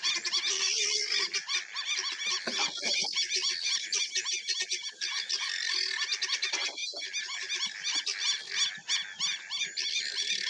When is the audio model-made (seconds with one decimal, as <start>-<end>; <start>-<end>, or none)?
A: 0.0-6.8; 9.4-10.5